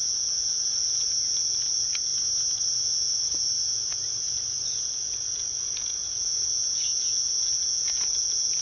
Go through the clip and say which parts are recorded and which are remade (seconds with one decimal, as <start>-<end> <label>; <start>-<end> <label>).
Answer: 0.0-2.1 remade; 2.1-2.7 recorded; 2.7-8.6 remade